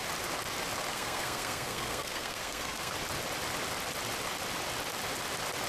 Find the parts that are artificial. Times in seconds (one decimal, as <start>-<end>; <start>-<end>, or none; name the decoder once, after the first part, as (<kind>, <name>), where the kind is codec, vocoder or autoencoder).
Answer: 0.9-2.9 (codec, SNAC)